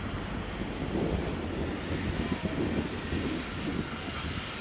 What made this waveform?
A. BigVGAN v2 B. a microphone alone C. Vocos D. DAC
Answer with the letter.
B